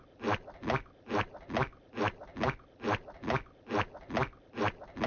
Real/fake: real